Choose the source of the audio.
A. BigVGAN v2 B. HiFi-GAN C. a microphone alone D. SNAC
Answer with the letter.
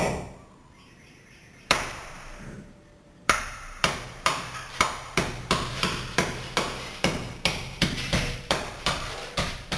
A